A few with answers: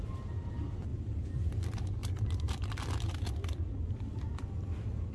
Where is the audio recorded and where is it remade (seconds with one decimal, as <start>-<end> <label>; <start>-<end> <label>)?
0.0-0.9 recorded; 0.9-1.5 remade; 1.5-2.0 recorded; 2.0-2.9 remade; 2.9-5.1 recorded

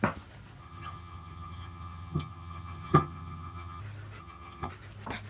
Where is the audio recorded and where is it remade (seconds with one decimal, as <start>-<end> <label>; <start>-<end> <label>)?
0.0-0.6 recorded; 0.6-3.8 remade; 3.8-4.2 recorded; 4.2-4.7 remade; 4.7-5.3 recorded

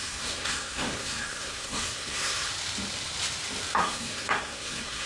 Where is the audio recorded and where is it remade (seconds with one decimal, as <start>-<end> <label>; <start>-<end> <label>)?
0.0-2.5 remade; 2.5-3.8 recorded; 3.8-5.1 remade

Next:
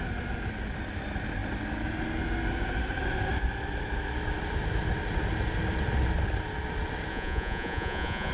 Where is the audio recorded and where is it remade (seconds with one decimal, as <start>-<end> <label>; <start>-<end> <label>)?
0.0-7.1 recorded; 7.1-8.3 remade

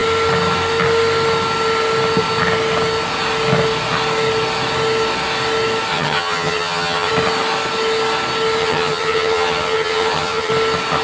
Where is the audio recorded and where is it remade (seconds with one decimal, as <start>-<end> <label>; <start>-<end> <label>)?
0.0-5.9 recorded; 5.9-7.1 remade; 7.1-8.6 recorded; 8.6-10.5 remade; 10.5-11.0 recorded

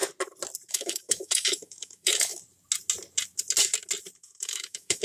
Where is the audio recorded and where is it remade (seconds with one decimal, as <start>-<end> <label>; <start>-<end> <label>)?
0.0-0.7 recorded; 0.7-2.3 remade; 2.3-4.2 recorded; 4.2-5.0 remade

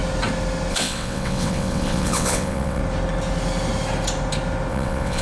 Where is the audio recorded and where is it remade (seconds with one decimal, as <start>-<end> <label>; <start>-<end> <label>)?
0.0-0.7 recorded; 0.7-2.8 remade; 2.8-4.7 recorded; 4.7-5.2 remade